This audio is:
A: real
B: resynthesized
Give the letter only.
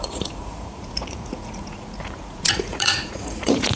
B